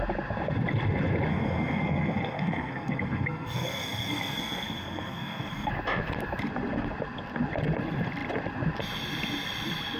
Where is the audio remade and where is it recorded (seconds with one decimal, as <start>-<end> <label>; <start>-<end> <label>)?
0.0-1.3 recorded; 1.3-5.7 remade; 5.7-10.0 recorded